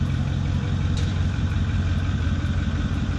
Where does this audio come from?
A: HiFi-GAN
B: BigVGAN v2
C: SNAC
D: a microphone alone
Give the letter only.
B